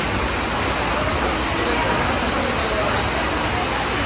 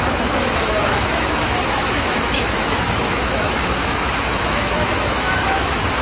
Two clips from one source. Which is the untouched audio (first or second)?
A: first